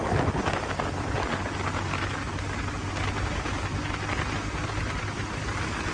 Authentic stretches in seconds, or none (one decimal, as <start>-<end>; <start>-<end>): 0.0-5.9